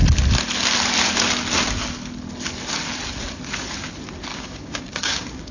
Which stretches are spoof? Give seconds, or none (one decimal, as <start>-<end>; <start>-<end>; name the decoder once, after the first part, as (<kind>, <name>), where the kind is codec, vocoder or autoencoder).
4.3-5.5 (codec, DAC)